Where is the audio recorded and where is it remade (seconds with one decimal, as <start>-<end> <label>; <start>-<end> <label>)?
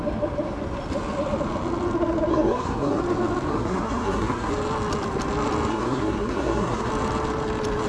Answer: 0.0-2.3 recorded; 2.3-3.0 remade; 3.0-3.5 recorded; 3.5-4.5 remade; 4.5-5.7 recorded; 5.7-6.9 remade; 6.9-7.9 recorded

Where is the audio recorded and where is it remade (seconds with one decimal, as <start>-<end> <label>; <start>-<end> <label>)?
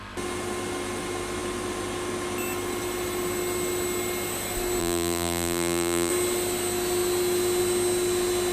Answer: 0.0-4.8 recorded; 4.8-6.1 remade; 6.1-8.5 recorded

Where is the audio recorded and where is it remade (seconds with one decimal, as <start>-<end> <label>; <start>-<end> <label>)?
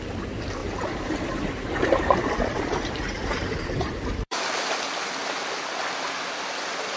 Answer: 0.0-0.6 recorded; 0.6-4.4 remade; 4.4-7.0 recorded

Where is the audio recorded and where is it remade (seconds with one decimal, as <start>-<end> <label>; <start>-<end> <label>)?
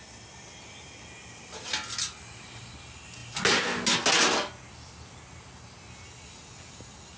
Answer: 0.0-7.2 recorded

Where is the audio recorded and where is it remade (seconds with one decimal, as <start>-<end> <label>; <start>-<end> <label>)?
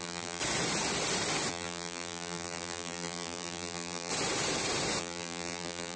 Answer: 0.0-0.4 remade; 0.4-1.5 recorded; 1.5-4.1 remade; 4.1-5.0 recorded; 5.0-6.0 remade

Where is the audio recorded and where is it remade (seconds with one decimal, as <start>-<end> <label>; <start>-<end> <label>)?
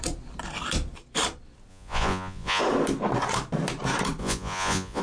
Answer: 0.0-1.7 recorded; 1.7-2.6 remade; 2.6-4.2 recorded; 4.2-5.0 remade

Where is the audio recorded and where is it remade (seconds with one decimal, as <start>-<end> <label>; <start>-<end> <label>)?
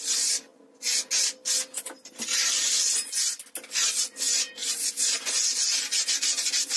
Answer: 0.0-0.5 recorded; 0.5-1.0 remade; 1.0-6.8 recorded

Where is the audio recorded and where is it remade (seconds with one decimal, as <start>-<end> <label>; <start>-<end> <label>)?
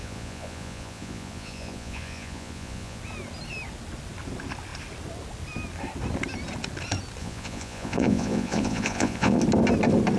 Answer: 0.0-3.0 remade; 3.0-7.2 recorded; 7.2-9.4 remade; 9.4-10.2 recorded